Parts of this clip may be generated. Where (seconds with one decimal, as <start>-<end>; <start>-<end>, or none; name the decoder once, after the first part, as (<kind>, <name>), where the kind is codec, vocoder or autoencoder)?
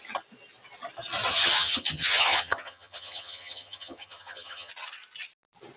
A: 1.3-4.7 (vocoder, HiFi-GAN)